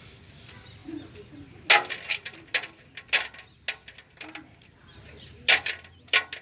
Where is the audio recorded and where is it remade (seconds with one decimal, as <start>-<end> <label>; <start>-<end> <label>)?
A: 0.0-6.4 recorded